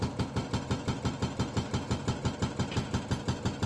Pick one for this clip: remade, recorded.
recorded